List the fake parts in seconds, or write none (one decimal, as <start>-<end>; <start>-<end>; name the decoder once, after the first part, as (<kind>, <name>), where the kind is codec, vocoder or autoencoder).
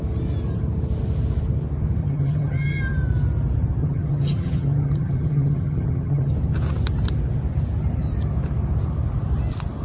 2.0-2.8 (vocoder, HiFi-GAN); 3.8-6.3